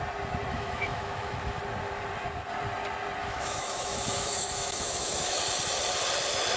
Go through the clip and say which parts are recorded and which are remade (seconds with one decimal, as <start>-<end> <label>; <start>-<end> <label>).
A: 0.0-0.5 recorded; 0.5-1.6 remade; 1.6-3.2 recorded; 3.2-5.4 remade; 5.4-6.6 recorded